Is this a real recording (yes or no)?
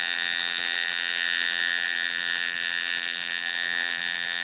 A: no